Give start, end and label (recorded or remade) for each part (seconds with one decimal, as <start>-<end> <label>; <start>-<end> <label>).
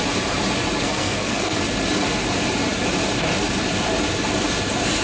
0.0-0.8 recorded; 0.8-1.6 remade; 1.6-5.0 recorded